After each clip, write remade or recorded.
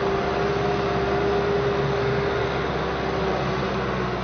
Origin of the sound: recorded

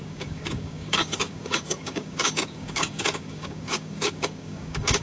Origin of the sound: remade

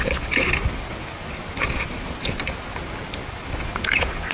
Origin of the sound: recorded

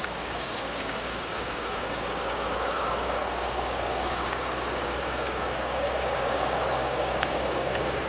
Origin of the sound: remade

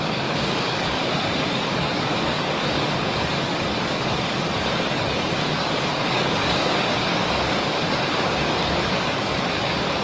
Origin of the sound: remade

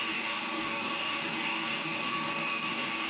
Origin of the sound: remade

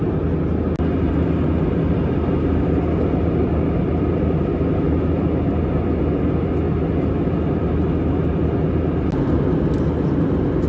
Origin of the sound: recorded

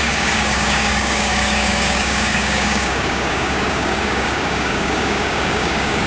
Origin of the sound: remade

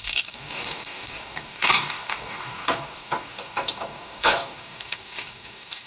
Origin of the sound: remade